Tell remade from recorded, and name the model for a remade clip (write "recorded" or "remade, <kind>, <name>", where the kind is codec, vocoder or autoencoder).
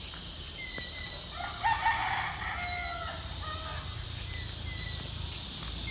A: recorded